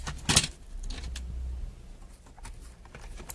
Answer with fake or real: real